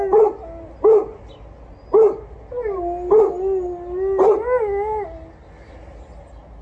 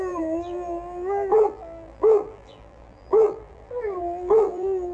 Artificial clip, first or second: second